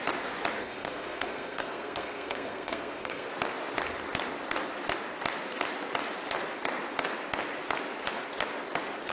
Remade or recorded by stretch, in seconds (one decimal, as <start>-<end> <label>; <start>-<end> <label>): 0.0-0.6 recorded; 0.6-3.3 remade; 3.3-9.1 recorded